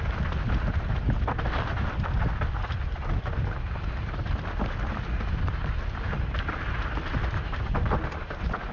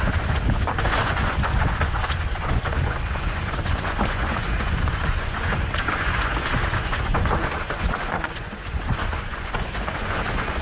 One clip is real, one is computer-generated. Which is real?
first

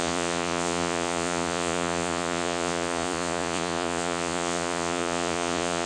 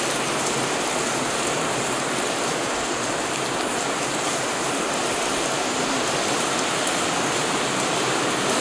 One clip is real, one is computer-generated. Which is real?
second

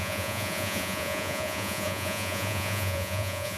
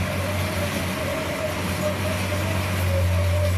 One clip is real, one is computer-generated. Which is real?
second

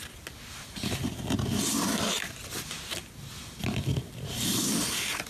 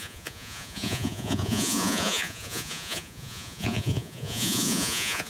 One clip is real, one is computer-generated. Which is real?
first